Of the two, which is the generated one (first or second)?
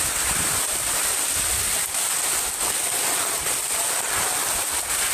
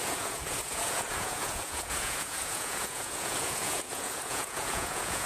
second